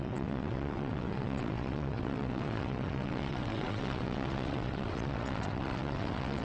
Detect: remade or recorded remade